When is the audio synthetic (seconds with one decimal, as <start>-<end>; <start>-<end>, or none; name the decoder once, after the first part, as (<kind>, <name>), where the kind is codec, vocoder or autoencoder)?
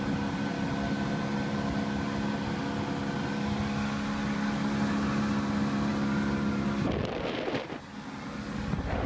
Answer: none